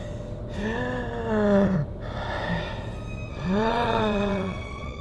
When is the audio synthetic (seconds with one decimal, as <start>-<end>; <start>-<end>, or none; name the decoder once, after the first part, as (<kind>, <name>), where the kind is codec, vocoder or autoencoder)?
3.3-5.0 (vocoder, WaveNeXt)